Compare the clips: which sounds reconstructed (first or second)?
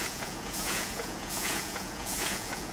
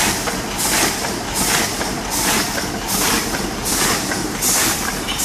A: first